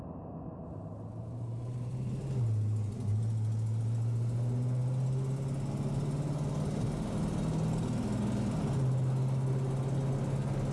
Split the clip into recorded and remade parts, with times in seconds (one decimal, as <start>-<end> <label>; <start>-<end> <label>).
0.0-1.2 recorded; 1.2-2.2 remade; 2.2-10.7 recorded

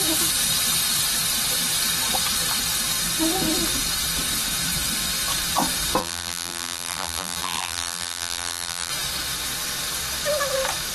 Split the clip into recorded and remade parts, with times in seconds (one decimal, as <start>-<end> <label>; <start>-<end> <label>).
0.0-6.0 recorded; 6.0-8.9 remade; 8.9-10.9 recorded

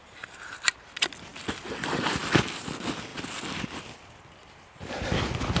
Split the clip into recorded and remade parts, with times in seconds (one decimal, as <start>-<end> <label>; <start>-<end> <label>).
0.0-3.1 recorded; 3.1-3.8 remade; 3.8-5.6 recorded